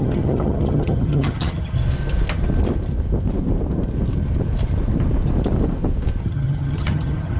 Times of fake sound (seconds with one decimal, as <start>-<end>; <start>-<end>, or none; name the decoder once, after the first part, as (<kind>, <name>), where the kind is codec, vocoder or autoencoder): 0.0-1.8 (vocoder, HiFi-GAN); 6.2-7.4